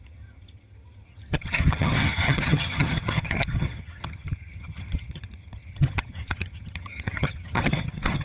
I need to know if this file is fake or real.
fake